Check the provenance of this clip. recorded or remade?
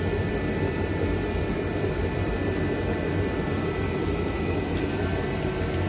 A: recorded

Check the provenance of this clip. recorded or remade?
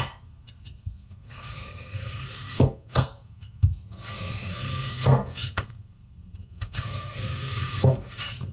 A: remade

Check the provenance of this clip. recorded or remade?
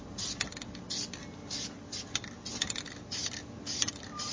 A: recorded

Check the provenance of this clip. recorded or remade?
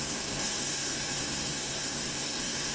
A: remade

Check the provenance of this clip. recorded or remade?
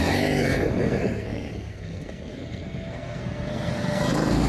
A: remade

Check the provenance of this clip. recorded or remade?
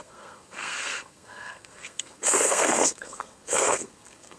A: remade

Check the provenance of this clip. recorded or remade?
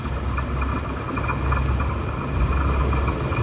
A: recorded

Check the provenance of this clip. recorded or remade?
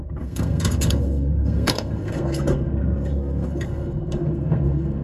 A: remade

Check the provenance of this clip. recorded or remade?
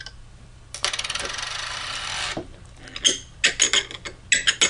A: recorded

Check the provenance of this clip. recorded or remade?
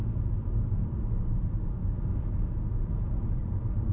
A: recorded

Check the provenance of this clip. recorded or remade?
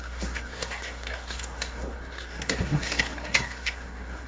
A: remade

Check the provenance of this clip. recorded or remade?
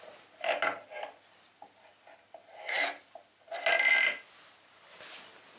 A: recorded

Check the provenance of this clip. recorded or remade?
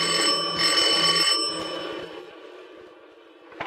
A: recorded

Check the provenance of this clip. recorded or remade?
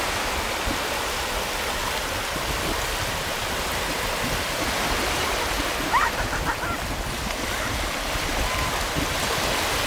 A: recorded